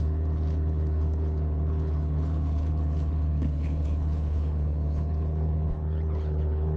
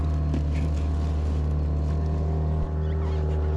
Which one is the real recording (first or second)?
second